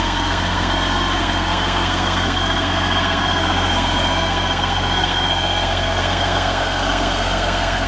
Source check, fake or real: fake